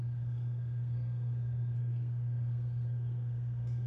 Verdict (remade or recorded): remade